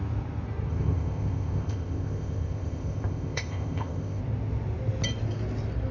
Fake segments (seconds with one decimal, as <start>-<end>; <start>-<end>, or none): 0.7-4.2